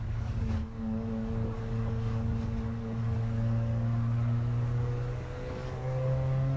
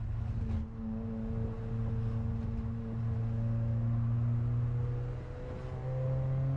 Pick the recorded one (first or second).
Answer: second